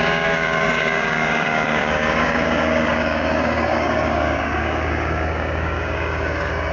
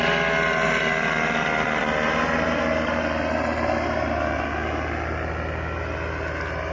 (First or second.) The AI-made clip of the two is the first